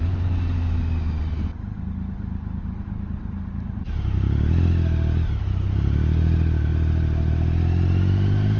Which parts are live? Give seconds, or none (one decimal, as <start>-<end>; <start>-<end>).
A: 0.0-8.6